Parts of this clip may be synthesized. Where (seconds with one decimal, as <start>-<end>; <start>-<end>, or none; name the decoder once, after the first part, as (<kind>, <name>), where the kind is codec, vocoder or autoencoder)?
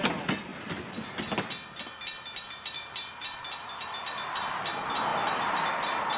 0.0-6.2 (vocoder, BigVGAN v2)